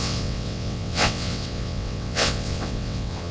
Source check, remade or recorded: remade